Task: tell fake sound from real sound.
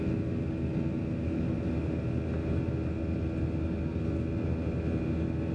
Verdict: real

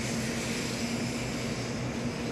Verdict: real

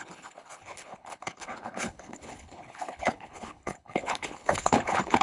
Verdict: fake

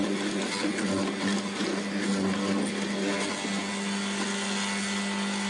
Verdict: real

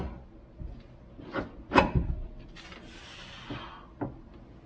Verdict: real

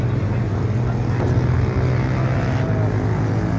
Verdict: real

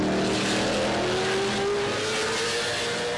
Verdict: real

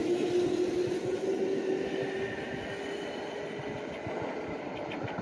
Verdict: real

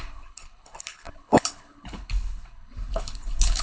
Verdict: fake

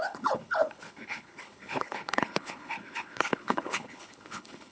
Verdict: fake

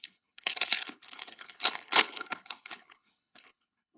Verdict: fake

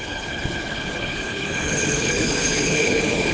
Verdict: fake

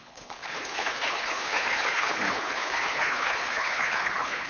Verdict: fake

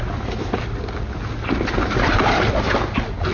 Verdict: real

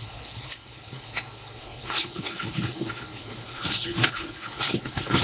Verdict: fake